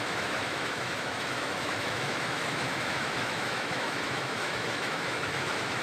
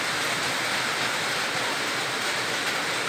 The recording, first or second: second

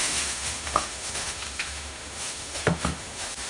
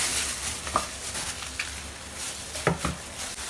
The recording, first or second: second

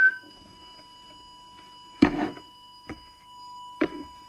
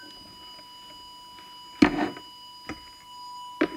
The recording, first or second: second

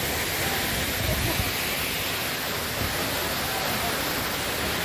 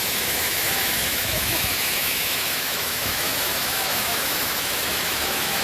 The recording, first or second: first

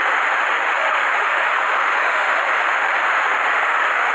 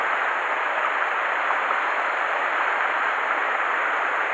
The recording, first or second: second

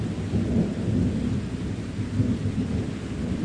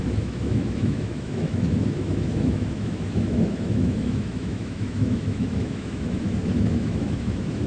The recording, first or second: first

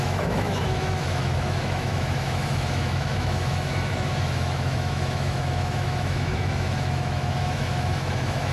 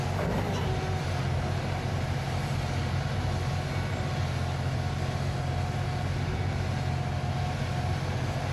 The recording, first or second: second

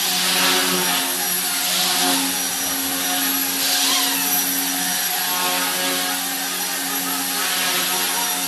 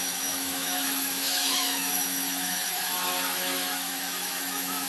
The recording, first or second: first